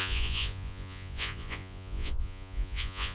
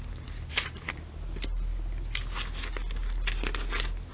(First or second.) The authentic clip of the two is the second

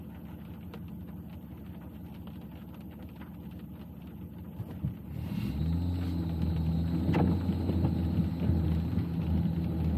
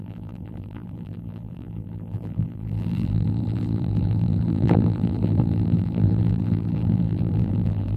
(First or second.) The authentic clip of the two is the first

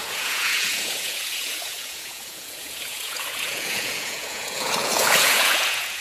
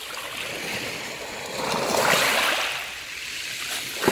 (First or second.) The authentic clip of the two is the second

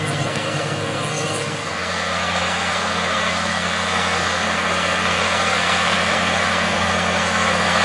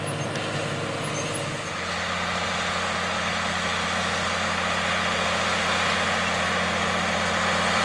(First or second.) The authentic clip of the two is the second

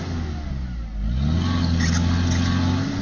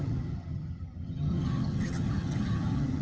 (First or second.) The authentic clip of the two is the first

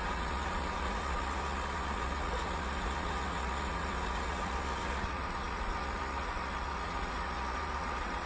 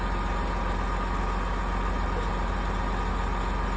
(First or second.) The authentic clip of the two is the second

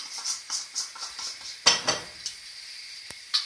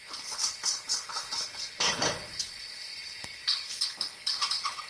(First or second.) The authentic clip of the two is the first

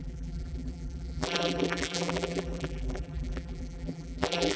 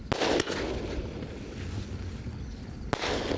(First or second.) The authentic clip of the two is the second